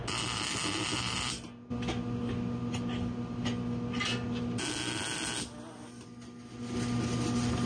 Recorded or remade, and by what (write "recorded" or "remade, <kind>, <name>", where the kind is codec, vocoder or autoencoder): recorded